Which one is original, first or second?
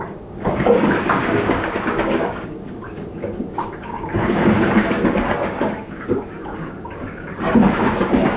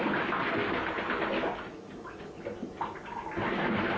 second